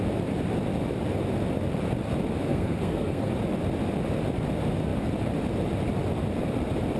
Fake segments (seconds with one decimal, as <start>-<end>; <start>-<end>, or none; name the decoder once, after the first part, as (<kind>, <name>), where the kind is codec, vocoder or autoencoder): 2.5-3.3 (codec, SNAC)